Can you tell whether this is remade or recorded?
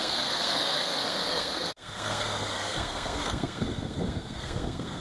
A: remade